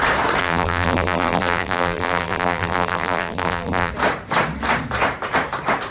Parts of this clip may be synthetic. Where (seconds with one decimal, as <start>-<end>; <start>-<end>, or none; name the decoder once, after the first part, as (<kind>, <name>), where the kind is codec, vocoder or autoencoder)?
0.4-3.9 (vocoder, BigVGAN v2)